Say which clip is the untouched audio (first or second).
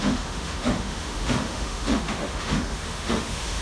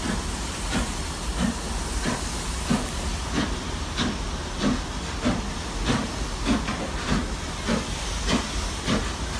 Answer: second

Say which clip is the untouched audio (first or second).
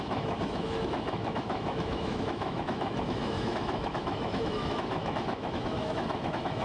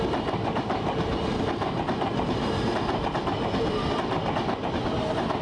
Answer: second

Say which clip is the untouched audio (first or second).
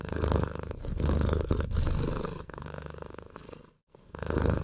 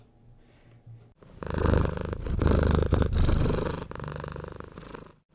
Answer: second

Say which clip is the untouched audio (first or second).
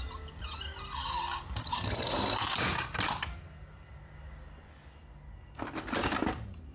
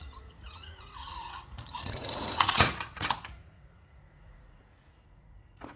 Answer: first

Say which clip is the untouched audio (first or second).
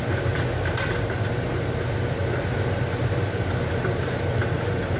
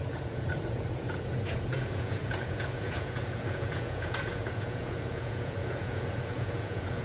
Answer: first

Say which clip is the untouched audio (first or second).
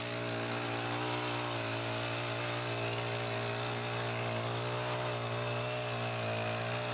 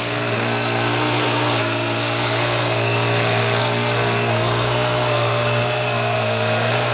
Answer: first